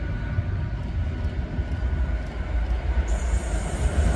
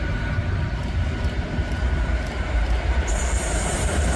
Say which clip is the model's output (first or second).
second